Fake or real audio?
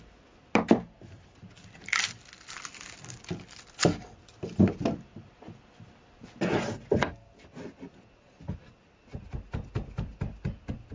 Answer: real